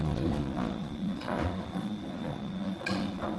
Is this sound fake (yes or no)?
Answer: yes